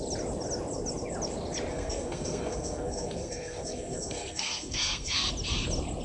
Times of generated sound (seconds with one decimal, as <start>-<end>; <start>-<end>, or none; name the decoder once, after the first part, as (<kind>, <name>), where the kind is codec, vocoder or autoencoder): 1.7-5.3 (codec, SNAC)